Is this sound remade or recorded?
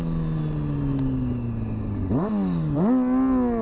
recorded